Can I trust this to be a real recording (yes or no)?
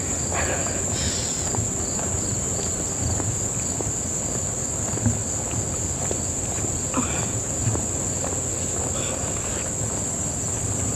yes